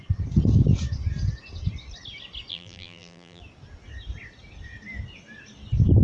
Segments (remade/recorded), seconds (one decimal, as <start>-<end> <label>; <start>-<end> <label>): 0.0-2.5 recorded; 2.5-3.4 remade; 3.4-6.0 recorded